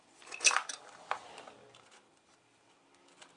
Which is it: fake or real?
real